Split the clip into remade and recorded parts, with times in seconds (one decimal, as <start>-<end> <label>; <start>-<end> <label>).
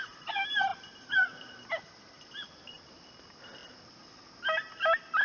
0.0-5.2 recorded